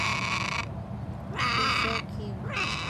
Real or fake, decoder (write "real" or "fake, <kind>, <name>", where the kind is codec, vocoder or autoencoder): real